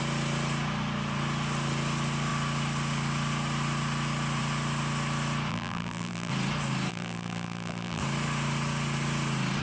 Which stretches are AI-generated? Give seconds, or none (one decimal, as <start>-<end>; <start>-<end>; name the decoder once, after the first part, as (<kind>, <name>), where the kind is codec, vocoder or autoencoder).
5.5-6.3 (vocoder, BigVGAN v2); 6.9-8.0

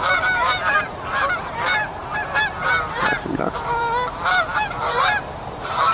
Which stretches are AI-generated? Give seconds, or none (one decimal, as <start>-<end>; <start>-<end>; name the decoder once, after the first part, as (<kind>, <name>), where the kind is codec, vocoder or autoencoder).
2.0-3.3 (vocoder, BigVGAN v2)

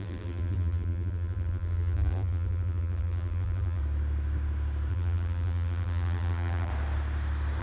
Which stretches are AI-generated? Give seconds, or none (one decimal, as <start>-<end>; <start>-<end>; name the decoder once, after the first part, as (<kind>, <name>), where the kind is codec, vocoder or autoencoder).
0.0-3.8 (vocoder, BigVGAN v2); 4.9-6.7

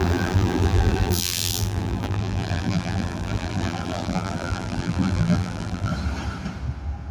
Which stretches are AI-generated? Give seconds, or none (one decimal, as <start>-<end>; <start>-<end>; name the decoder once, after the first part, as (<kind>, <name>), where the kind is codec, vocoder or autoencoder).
0.0-5.9 (vocoder, BigVGAN v2)

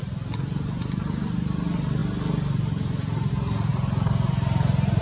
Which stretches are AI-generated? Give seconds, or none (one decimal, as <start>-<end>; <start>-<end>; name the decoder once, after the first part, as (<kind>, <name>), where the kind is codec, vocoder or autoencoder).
none

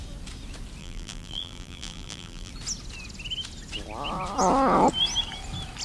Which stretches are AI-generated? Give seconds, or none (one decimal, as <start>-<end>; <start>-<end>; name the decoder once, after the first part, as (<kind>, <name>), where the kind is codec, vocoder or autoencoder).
0.8-2.5 (vocoder, BigVGAN v2)

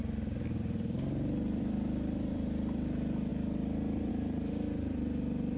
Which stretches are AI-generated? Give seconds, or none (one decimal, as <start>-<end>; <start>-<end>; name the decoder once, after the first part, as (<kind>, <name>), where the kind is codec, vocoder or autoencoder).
0.6-5.6 (vocoder, BigVGAN v2)

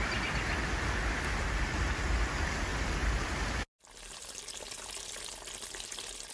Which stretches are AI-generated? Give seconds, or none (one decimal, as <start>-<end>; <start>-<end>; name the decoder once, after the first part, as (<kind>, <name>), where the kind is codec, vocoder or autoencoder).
2.7-3.4 (vocoder, BigVGAN v2)